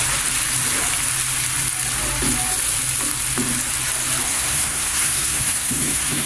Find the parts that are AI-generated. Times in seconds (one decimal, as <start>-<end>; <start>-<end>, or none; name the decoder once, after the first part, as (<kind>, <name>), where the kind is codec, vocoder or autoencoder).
4.3-6.3 (codec, SNAC)